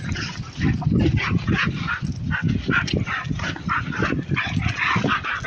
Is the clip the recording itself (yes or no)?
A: yes